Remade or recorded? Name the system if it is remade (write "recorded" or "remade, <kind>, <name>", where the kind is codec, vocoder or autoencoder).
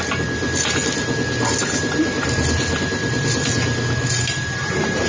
recorded